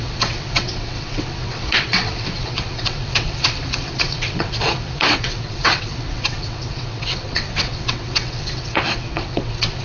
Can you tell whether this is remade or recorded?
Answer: remade